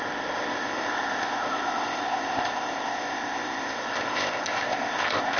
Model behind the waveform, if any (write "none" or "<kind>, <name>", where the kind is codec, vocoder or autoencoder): codec, ZipCodec